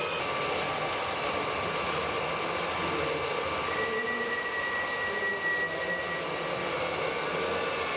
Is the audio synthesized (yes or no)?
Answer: no